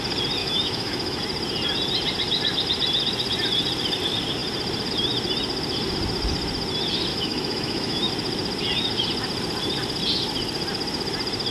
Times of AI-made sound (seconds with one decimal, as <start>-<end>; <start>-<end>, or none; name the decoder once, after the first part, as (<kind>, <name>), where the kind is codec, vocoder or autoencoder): 0.4-1.2 (autoencoder, DAC-VAE); 7.1-8.1